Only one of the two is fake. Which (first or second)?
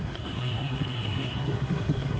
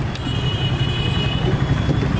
first